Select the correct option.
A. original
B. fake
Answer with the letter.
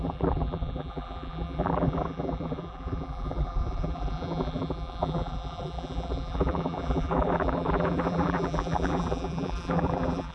B